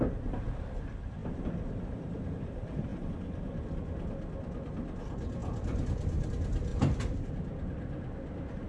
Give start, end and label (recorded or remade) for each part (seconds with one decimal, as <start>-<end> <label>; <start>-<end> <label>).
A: 0.0-1.2 recorded; 1.2-2.5 remade; 2.5-6.7 recorded; 6.7-7.3 remade; 7.3-8.7 recorded